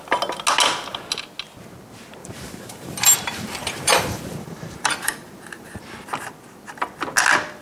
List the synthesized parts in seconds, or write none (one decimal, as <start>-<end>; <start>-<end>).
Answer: 2.2-5.8